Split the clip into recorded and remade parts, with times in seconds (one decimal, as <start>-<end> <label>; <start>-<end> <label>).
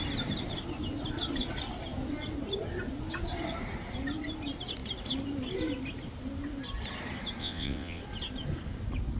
0.0-7.4 recorded; 7.4-8.0 remade; 8.0-9.2 recorded